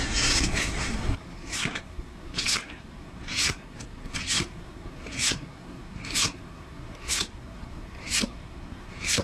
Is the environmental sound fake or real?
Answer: fake